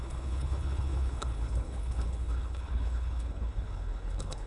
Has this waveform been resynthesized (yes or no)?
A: yes